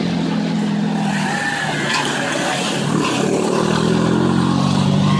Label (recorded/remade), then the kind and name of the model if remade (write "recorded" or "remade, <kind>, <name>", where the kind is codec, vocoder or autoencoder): recorded